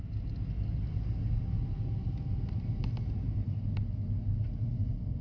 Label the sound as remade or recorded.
recorded